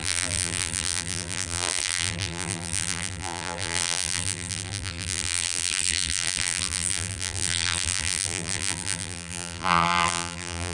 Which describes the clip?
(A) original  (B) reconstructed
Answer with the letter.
B